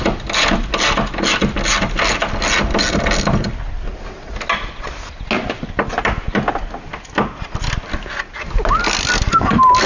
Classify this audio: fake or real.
real